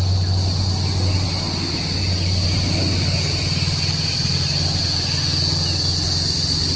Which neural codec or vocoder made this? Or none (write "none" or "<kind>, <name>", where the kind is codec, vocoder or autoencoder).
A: none